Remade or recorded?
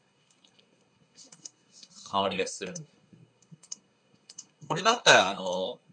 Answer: remade